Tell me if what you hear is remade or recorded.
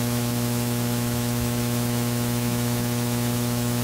remade